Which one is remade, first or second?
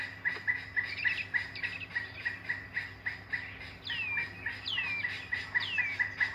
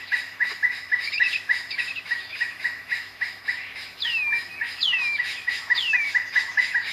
second